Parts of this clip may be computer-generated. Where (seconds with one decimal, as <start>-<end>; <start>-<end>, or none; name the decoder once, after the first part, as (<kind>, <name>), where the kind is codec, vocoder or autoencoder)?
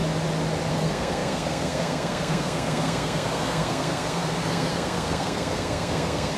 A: 0.7-6.4 (codec, SNAC)